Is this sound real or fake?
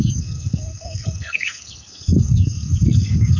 fake